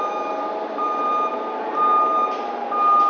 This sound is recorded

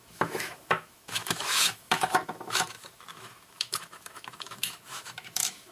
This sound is remade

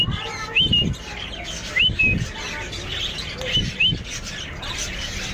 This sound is recorded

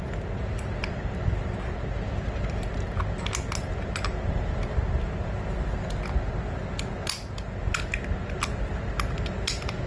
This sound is recorded